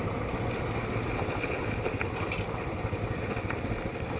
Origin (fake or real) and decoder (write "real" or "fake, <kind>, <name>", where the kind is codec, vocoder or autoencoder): real